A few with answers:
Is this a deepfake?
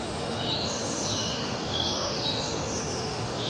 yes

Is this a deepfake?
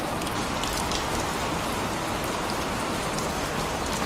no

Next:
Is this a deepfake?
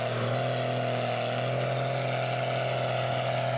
no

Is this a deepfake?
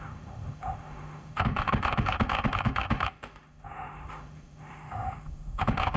yes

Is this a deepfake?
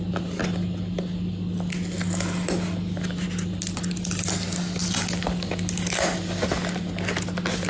no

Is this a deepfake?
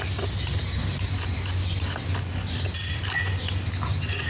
no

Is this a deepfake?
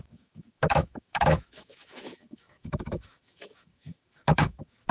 yes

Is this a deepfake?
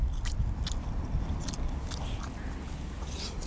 no